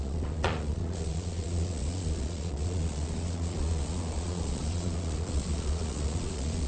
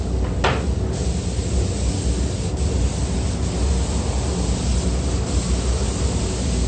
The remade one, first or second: first